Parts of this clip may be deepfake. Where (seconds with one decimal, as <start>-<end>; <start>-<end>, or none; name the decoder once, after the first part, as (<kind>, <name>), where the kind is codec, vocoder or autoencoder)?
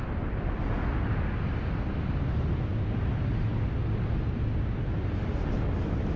none